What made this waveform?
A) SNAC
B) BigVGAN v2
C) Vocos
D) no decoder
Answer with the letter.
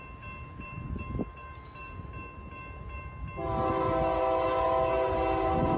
D